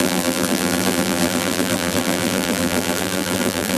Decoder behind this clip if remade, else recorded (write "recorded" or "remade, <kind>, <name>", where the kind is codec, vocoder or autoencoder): remade, vocoder, BigVGAN v2